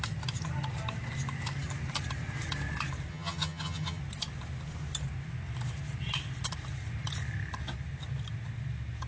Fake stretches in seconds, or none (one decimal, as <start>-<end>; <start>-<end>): 3.1-4.0